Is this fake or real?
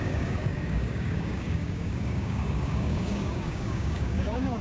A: fake